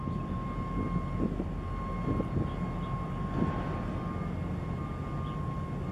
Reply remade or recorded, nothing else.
recorded